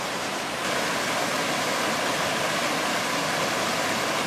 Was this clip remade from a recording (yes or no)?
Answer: no